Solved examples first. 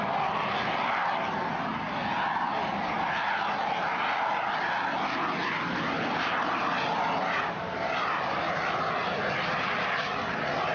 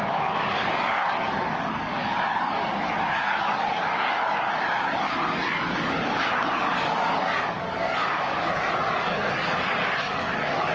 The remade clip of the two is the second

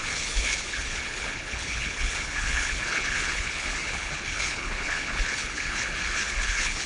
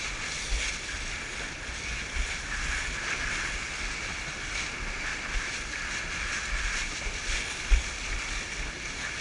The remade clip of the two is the first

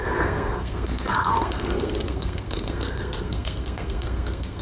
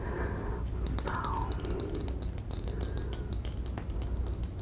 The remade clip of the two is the first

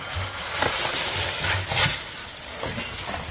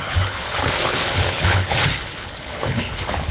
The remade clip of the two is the second